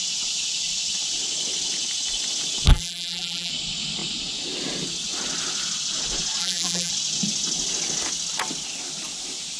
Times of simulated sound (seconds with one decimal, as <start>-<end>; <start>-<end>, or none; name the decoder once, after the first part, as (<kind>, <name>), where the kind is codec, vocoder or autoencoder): 2.7-3.5 (vocoder, BigVGAN v2); 6.4-6.9